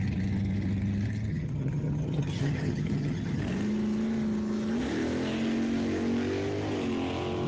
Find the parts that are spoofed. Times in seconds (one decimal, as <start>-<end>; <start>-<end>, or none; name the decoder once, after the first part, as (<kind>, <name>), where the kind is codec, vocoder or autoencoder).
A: 1.3-3.4 (vocoder, HiFi-GAN)